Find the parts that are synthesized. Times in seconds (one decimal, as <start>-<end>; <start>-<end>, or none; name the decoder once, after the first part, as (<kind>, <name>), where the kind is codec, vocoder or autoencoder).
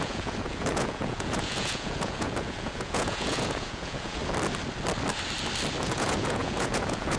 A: 0.0-4.2 (vocoder, Vocos); 5.8-7.2